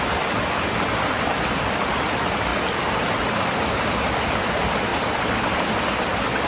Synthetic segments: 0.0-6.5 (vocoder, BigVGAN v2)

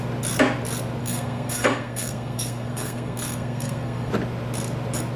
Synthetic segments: 1.0-4.1 (codec, SNAC)